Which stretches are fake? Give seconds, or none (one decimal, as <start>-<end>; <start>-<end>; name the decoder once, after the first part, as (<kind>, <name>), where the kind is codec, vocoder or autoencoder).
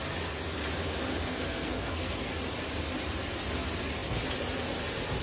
1.2-2.3 (codec, SNAC)